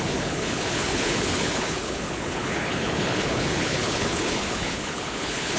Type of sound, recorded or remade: remade